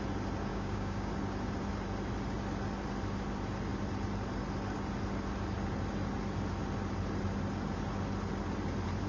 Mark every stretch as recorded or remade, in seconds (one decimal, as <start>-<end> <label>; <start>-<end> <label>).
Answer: 0.0-0.5 recorded; 0.5-1.1 remade; 1.1-9.1 recorded